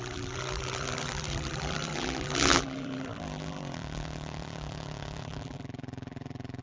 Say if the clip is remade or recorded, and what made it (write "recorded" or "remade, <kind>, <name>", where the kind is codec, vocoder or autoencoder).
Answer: remade, vocoder, BigVGAN v2